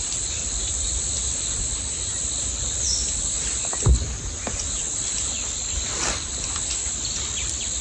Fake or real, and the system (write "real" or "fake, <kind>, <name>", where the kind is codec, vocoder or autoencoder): fake, vocoder, BigVGAN v2